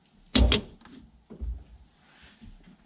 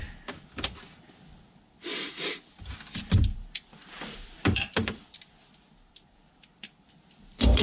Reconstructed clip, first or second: second